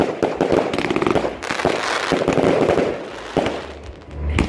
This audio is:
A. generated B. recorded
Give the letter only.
B